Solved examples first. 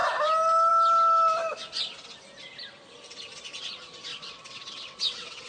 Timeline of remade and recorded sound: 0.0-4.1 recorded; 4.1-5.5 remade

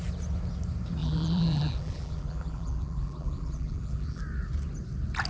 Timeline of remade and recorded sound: 0.0-1.0 recorded; 1.0-4.2 remade; 4.2-5.3 recorded

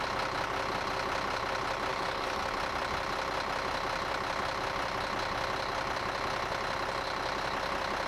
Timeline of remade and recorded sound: 0.0-1.9 recorded; 1.9-2.5 remade; 2.5-8.1 recorded

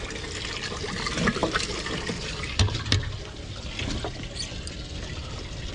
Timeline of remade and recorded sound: 0.0-1.4 recorded; 1.4-3.0 remade; 3.0-5.7 recorded

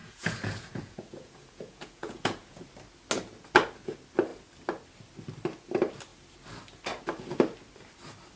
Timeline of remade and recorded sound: 0.0-2.6 remade; 2.6-8.4 recorded

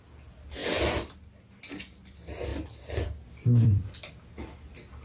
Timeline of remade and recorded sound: 0.0-0.6 recorded; 0.6-1.6 remade; 1.6-2.5 recorded; 2.5-4.1 remade; 4.1-5.0 recorded

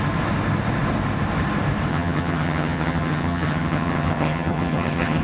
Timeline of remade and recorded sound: 0.0-1.9 recorded; 1.9-5.2 remade

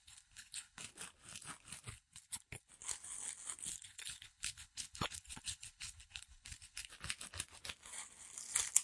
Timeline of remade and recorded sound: 0.0-0.8 remade; 0.8-1.9 recorded; 1.9-2.7 remade; 2.7-3.7 recorded; 3.7-6.9 remade; 6.9-8.8 recorded